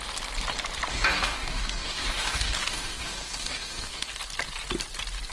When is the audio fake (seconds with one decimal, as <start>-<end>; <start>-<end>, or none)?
0.9-4.1